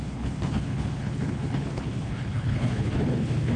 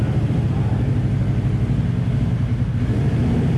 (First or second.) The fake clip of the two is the first